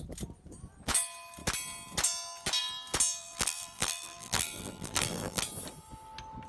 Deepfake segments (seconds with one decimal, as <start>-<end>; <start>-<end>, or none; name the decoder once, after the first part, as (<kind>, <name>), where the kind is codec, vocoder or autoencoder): 3.2-5.4 (vocoder, BigVGAN v2)